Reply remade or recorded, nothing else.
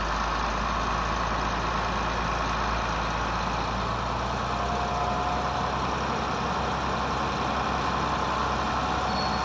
recorded